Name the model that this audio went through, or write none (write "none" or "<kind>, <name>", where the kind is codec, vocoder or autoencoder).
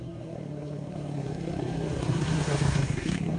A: codec, SNAC